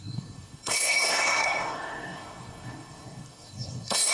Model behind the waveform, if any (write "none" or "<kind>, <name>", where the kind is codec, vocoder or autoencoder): codec, SNAC